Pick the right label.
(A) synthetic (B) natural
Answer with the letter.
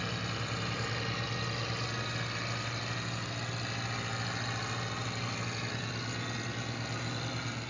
B